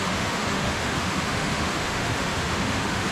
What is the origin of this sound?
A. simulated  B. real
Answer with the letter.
A